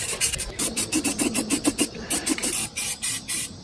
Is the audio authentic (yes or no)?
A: no